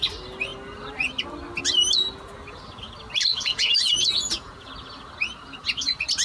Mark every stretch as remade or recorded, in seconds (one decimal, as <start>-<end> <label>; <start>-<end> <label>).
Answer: 0.0-3.3 recorded; 3.3-4.7 remade; 4.7-6.2 recorded